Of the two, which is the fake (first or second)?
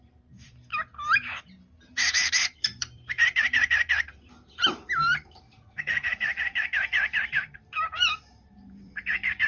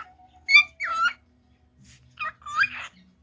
first